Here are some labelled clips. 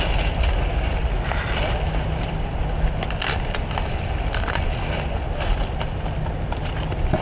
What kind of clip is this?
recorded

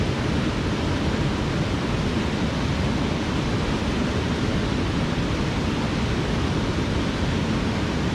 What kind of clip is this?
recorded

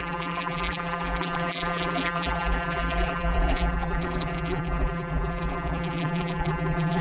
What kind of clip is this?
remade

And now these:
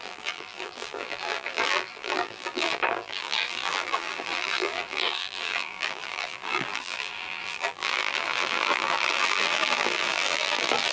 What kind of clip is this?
remade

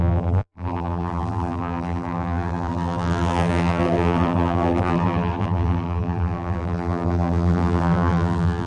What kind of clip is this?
remade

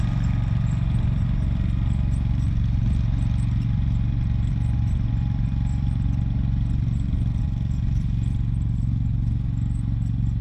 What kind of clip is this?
recorded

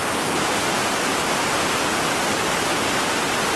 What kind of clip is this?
recorded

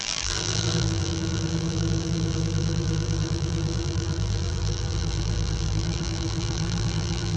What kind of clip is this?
remade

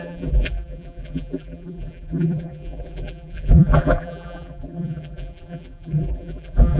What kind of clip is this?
remade